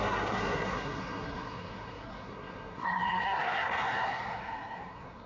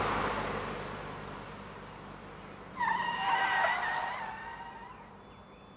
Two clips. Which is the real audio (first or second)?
second